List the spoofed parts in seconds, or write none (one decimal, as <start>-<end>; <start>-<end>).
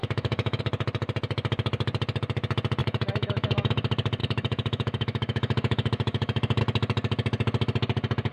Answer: 0.0-0.6; 2.8-3.7; 4.2-6.6